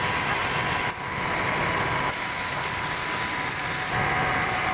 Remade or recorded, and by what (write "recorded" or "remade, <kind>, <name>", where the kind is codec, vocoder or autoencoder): recorded